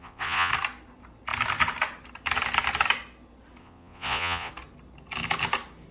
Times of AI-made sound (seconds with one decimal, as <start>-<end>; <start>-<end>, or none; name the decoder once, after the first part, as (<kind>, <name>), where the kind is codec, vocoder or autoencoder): 0.0-0.5 (vocoder, Vocos); 3.6-4.5